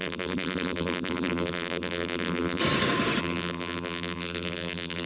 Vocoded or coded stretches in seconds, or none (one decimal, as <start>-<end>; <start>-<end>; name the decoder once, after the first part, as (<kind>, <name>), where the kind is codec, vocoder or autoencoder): 0.0-2.6 (vocoder, BigVGAN v2); 3.2-5.1

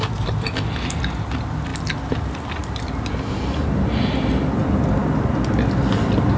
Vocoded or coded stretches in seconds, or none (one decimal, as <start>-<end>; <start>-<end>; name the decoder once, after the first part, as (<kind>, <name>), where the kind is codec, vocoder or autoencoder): none